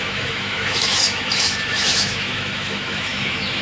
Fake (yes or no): yes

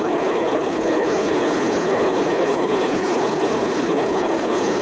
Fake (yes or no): yes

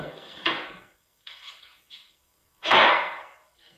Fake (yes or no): yes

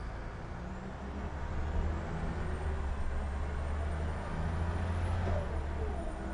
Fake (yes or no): no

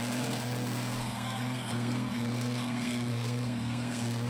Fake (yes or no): yes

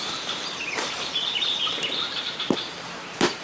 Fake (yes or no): yes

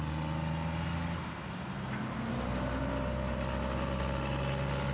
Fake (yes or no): no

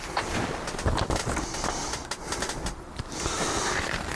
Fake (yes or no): no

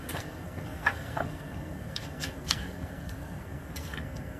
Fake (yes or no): yes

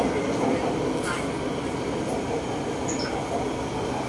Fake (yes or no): no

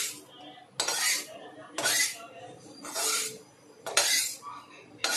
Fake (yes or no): no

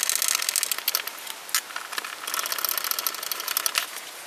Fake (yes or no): no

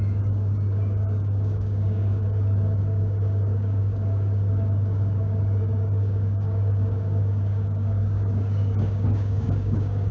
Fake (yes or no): yes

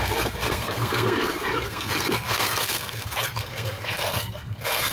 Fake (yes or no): yes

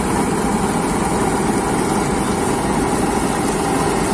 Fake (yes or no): no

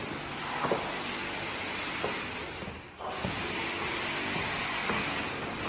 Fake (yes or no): no